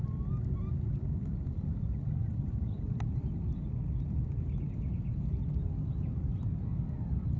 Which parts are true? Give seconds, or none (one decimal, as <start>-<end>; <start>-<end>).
0.0-7.4

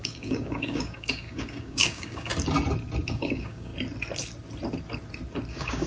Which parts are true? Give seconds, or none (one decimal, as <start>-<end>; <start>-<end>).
2.3-3.1; 3.7-5.5

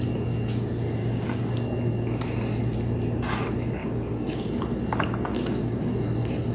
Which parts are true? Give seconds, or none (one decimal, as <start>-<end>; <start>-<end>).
0.0-1.0; 1.5-3.8; 4.5-5.3; 6.0-6.5

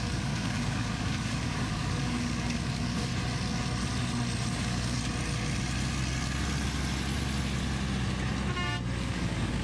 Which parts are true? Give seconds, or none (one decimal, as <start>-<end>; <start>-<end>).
3.1-4.5; 5.0-9.0

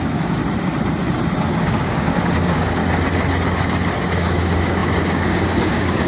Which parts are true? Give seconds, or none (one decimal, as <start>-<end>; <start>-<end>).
0.4-1.6; 2.8-4.1